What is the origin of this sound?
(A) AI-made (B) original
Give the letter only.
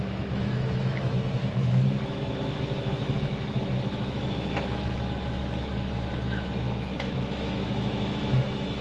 A